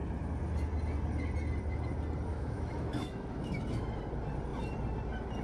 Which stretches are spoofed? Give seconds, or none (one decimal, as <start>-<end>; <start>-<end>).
2.3-4.0